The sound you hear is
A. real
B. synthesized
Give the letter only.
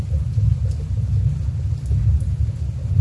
A